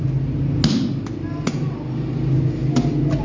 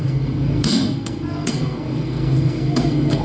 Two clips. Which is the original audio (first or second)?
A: first